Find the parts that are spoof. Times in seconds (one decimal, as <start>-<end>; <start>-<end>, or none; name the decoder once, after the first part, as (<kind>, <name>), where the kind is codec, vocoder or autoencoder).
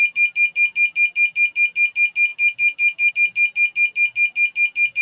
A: none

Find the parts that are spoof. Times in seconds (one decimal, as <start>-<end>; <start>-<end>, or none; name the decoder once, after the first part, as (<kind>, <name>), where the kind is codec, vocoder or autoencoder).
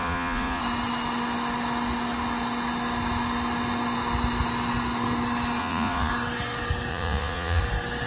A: 0.0-0.6 (vocoder, Vocos); 5.6-6.1; 6.9-7.6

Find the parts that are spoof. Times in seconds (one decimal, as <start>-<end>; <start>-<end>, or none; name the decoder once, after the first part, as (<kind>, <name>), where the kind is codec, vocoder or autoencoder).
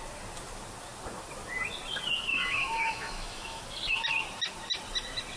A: 2.3-3.6 (autoencoder, DAC-VAE)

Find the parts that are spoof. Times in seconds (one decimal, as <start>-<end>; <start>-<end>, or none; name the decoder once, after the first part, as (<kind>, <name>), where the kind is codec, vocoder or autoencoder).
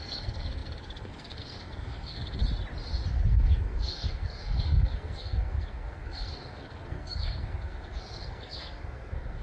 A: 0.0-2.4 (codec, SNAC); 3.1-9.4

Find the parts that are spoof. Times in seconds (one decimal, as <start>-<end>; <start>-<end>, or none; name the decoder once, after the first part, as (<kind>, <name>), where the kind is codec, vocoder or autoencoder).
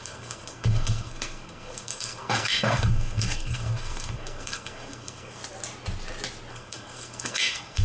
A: 0.0-5.4 (codec, SNAC); 6.5-7.8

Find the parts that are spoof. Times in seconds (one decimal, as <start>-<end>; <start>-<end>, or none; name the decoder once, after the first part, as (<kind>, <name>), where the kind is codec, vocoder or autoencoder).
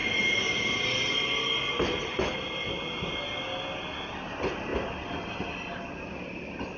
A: 4.7-5.5 (vocoder, BigVGAN v2)